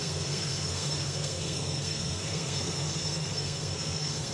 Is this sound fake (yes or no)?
yes